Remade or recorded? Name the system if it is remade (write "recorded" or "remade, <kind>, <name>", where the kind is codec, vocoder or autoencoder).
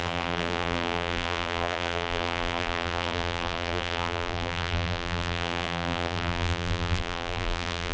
remade, vocoder, BigVGAN v2